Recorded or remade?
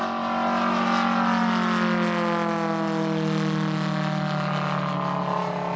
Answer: recorded